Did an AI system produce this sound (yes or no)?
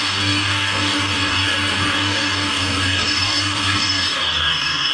yes